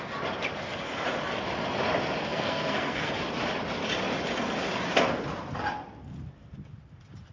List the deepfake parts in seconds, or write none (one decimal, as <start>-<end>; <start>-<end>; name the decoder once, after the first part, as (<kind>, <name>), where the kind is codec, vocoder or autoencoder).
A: 2.3-3.1 (codec, SNAC)